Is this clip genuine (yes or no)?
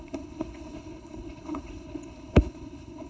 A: no